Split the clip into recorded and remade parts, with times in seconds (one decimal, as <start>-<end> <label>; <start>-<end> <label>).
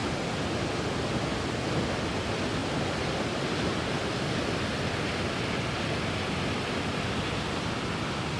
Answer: 0.0-8.4 recorded